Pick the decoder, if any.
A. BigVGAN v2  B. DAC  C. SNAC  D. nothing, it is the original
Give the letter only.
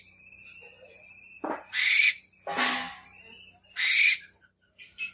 D